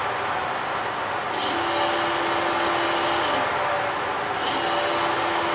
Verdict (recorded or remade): recorded